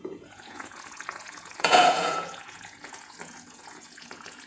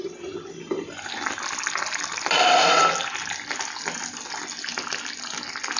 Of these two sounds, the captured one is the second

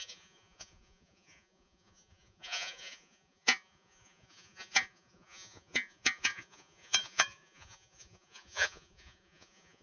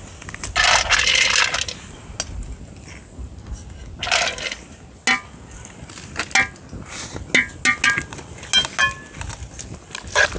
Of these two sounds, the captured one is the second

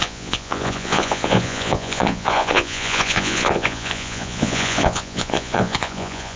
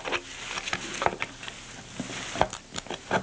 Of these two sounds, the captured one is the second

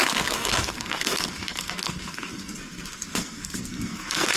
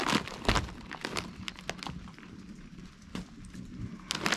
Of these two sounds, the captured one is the second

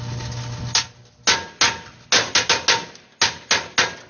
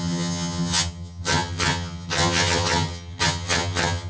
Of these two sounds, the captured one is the first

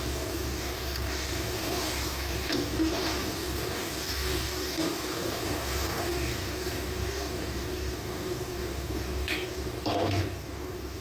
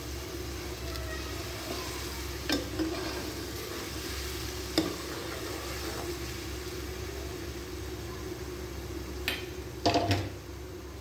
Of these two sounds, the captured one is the second